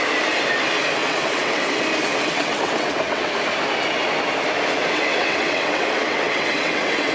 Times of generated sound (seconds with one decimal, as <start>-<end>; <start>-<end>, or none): 1.0-1.6; 2.1-3.3; 4.8-7.1